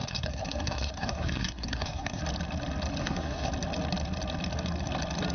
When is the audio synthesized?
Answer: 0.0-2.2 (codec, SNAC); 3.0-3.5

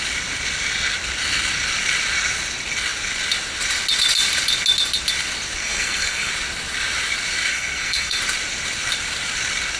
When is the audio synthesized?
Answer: 5.6-6.3 (codec, SNAC); 7.5-8.2

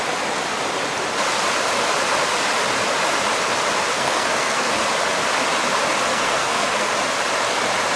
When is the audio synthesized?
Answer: 3.9-4.7 (codec, SNAC); 6.1-6.9

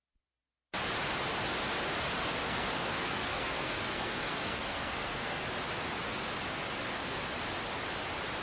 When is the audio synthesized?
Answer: 2.2-5.4 (codec, SNAC)

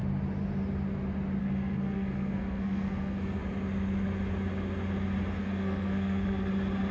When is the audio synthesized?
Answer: 1.4-3.4 (codec, SNAC); 5.4-6.5

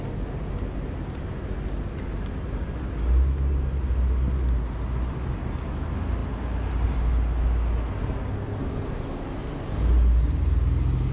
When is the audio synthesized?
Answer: none

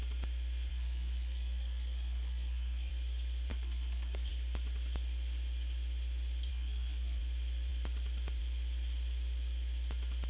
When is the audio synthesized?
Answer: 0.7-2.9 (codec, SNAC); 3.5-4.3; 6.5-7.2